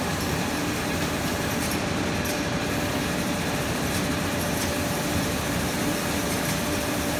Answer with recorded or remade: remade